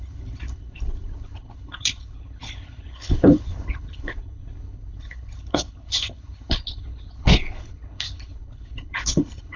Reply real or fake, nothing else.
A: fake